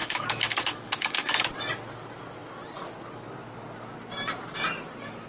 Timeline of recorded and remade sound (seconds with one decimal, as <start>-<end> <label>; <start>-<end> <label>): 0.0-1.4 remade; 1.4-5.3 recorded